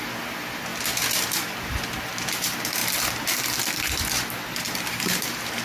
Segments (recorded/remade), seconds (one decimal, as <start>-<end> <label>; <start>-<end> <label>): 0.0-5.6 recorded